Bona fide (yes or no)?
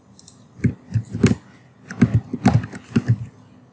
yes